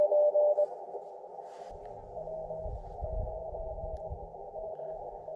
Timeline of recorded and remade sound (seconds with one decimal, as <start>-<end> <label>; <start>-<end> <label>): 0.0-3.4 recorded; 3.4-5.0 remade; 5.0-5.4 recorded